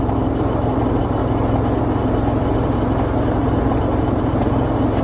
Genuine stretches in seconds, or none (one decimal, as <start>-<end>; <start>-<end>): 1.2-4.2